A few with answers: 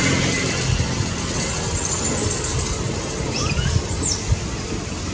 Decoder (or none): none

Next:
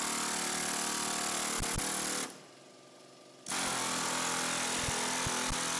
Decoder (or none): none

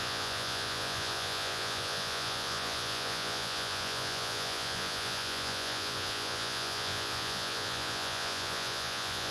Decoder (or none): vocoder, Vocos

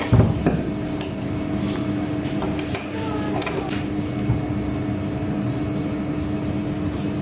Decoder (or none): none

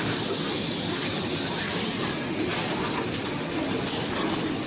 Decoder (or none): none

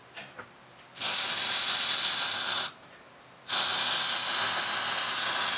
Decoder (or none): none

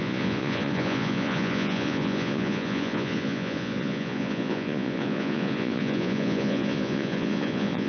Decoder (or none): vocoder, Vocos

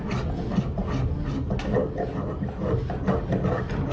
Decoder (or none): none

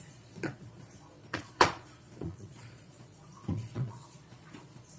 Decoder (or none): vocoder, Vocos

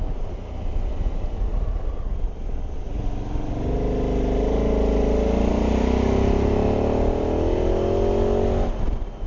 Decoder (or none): none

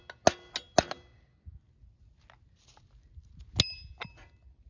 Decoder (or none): none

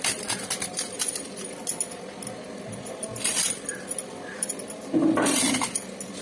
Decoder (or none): none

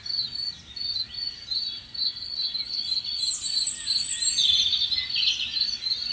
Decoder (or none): none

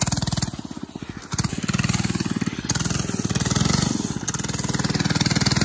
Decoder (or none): none